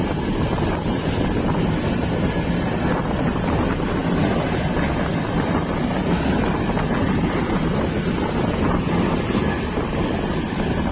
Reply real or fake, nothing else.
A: real